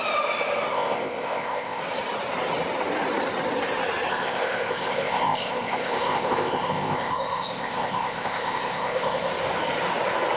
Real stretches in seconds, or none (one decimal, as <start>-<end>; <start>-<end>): 0.0-0.7; 1.8-4.1; 9.3-10.4